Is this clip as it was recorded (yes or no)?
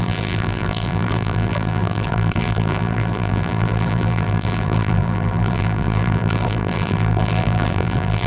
no